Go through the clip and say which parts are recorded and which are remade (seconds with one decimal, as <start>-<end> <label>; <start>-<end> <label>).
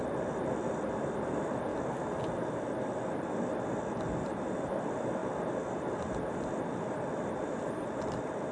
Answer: 0.0-1.7 remade; 1.7-4.6 recorded; 4.6-5.2 remade; 5.2-6.3 recorded; 6.3-8.5 remade